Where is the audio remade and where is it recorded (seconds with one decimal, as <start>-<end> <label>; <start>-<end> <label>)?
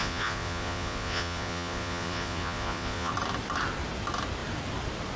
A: 0.0-3.1 remade; 3.1-5.2 recorded